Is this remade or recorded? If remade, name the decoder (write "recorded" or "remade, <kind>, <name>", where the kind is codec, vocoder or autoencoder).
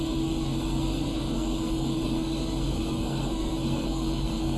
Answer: remade, codec, SNAC